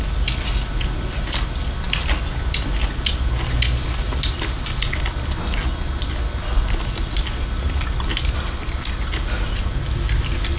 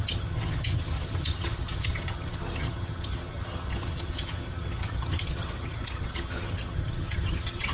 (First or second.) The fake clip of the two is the second